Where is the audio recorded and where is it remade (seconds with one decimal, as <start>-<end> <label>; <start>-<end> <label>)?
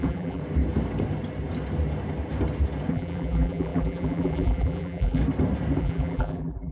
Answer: 0.0-0.4 remade; 0.4-2.9 recorded; 2.9-5.2 remade; 5.2-5.8 recorded; 5.8-6.7 remade